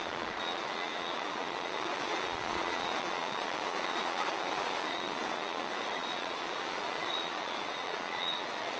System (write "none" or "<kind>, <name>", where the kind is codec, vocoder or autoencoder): vocoder, Vocos